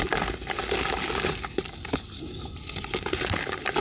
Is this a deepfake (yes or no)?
no